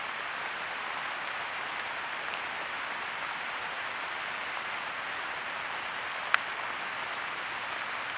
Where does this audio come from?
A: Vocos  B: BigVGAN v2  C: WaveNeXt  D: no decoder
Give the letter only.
D